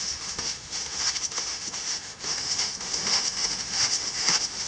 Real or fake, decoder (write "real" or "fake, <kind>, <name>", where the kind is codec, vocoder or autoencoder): fake, autoencoder, DAC-VAE